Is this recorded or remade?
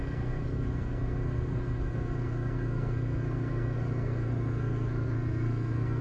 remade